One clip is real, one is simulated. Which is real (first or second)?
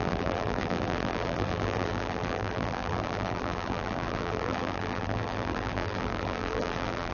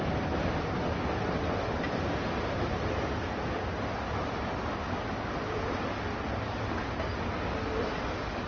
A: second